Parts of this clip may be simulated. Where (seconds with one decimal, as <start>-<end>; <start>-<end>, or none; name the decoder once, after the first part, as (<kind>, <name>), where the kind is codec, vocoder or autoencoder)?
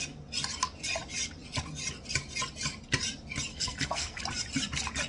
3.5-4.2 (codec, SNAC)